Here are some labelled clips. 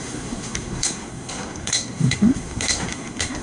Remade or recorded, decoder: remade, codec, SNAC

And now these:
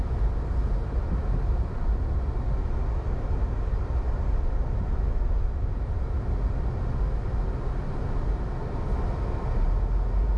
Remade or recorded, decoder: recorded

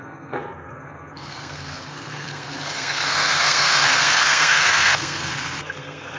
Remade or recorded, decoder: remade, codec, SNAC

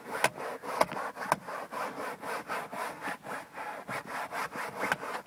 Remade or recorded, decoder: recorded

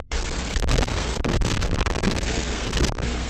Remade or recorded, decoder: remade, codec, SNAC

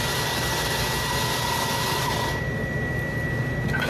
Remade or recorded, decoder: recorded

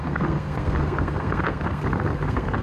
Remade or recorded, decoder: remade, codec, SNAC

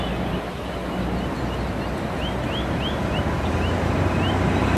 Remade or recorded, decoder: recorded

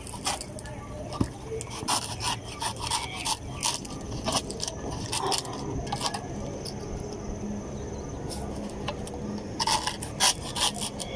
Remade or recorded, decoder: recorded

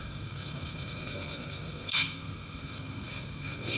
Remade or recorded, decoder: remade, codec, SNAC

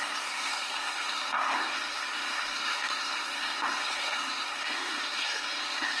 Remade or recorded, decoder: remade, codec, SNAC